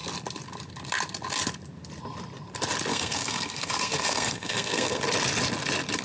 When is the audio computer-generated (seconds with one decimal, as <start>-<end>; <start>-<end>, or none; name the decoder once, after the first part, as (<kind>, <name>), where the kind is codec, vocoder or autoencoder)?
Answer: 2.9-5.0 (codec, SNAC)